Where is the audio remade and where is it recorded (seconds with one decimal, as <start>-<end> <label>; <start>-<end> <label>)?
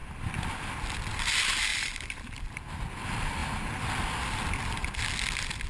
0.0-5.7 recorded